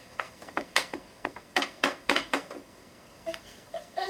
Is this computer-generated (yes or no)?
yes